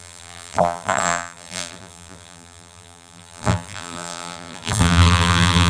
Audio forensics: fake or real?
fake